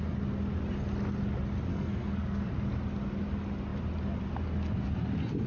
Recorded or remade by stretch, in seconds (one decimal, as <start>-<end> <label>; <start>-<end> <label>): 0.0-1.7 recorded; 1.7-2.5 remade; 2.5-5.5 recorded